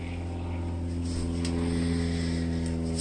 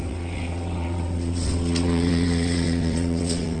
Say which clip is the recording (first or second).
first